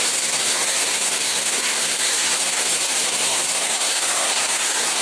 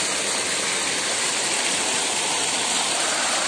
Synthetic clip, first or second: first